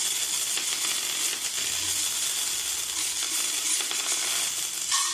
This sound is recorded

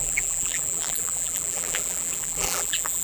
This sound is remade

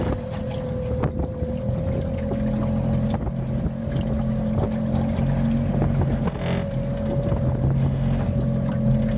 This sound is recorded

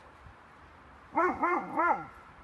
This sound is remade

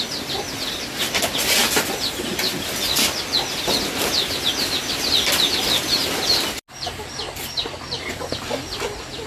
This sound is recorded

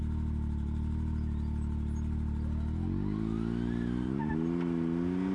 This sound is recorded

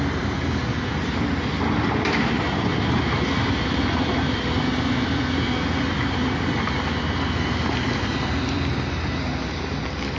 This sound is remade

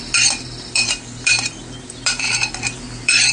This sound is remade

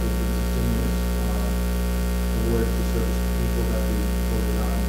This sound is recorded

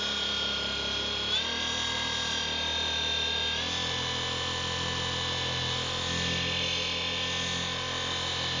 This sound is recorded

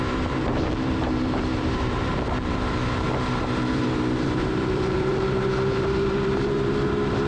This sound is remade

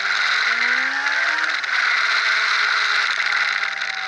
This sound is recorded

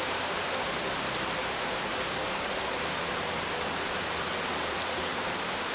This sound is remade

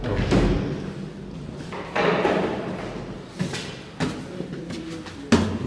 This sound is recorded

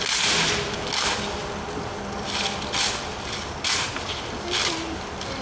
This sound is recorded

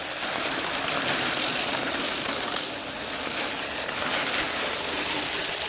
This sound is recorded